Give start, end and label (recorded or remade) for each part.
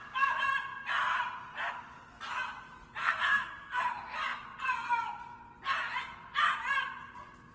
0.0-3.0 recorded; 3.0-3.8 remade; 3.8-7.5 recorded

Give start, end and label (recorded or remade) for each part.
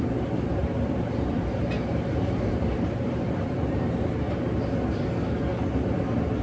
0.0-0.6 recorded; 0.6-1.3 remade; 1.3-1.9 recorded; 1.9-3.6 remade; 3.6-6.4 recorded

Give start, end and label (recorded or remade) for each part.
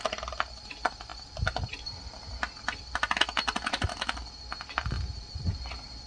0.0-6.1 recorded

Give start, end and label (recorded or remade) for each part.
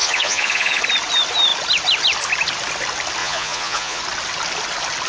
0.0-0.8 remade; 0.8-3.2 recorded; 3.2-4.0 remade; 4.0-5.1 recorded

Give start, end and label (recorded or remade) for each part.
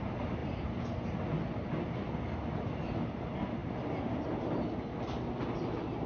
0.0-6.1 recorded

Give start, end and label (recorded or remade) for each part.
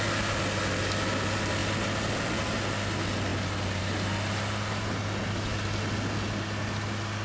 0.0-7.2 recorded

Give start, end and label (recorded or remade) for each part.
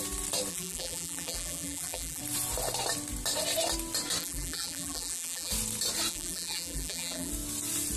0.0-0.5 recorded; 0.5-2.2 remade; 2.2-4.2 recorded; 4.2-5.5 remade; 5.5-6.1 recorded; 6.1-7.3 remade; 7.3-8.0 recorded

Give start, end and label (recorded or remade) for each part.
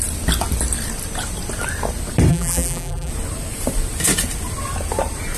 0.0-2.3 recorded; 2.3-3.1 remade; 3.1-5.4 recorded